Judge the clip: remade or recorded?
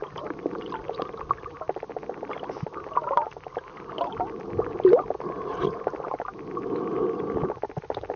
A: recorded